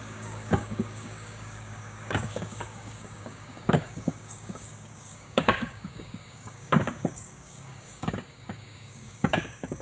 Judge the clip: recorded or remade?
remade